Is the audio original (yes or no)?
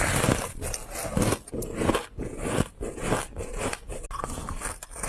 yes